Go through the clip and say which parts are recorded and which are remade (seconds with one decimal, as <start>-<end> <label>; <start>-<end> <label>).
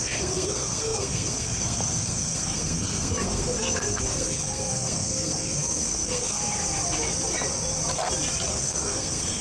0.0-6.4 remade; 6.4-8.5 recorded; 8.5-9.4 remade